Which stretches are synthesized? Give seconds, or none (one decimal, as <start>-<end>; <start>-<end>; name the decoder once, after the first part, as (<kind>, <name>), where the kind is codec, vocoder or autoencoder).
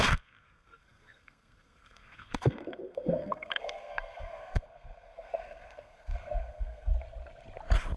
0.0-6.9 (codec, SNAC)